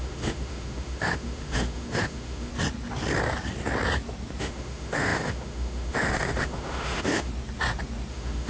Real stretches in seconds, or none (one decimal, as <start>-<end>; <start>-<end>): 2.5-4.4; 7.3-8.1